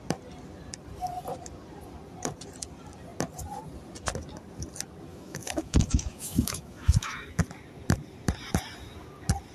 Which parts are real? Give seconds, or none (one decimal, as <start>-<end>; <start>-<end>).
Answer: 0.0-5.1; 7.4-9.5